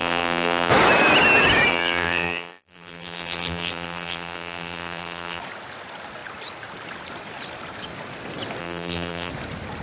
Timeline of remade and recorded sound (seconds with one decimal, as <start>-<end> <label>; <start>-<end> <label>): 0.0-0.7 remade; 0.7-1.7 recorded; 1.7-5.4 remade; 5.4-8.6 recorded; 8.6-9.3 remade; 9.3-9.8 recorded